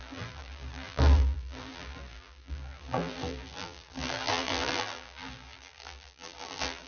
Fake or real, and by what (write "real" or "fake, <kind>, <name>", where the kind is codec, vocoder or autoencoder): fake, vocoder, BigVGAN v2